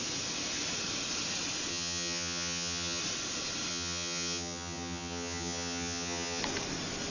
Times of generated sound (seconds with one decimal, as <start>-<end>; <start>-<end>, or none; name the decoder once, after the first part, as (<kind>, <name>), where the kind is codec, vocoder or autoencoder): 1.7-3.0 (vocoder, HiFi-GAN); 3.7-6.4